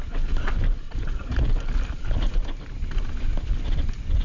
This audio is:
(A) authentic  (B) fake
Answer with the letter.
A